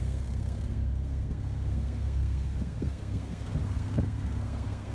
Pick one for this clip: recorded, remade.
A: remade